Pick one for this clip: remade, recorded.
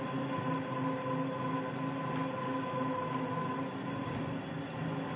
recorded